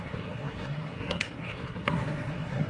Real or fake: fake